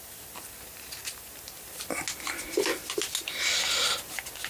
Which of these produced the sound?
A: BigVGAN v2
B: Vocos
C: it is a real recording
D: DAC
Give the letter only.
C